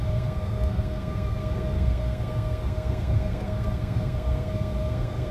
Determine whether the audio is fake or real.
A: fake